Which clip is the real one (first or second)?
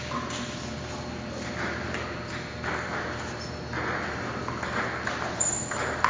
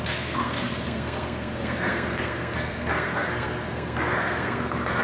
first